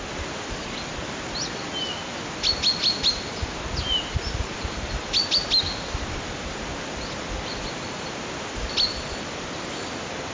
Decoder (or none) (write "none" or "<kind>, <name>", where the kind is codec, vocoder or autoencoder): none